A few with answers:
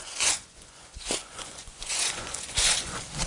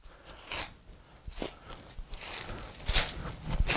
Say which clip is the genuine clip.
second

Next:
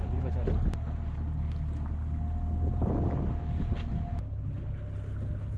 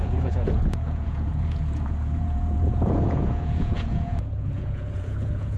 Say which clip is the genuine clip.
first